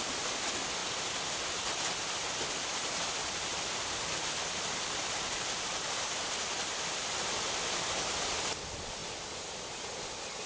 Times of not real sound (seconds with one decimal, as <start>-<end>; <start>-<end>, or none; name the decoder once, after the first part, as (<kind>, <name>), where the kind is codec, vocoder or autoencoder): 0.0-0.8 (vocoder, BigVGAN v2); 2.7-10.5